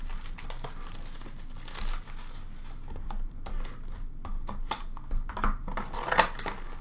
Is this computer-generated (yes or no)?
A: no